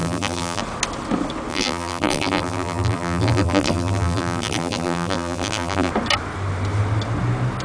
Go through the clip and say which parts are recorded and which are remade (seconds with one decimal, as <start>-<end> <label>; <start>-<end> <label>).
0.0-0.6 remade; 0.6-1.5 recorded; 1.5-5.9 remade; 5.9-7.6 recorded